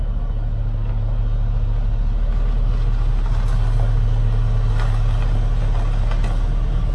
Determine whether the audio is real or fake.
real